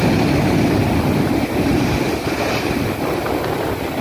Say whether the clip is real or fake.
fake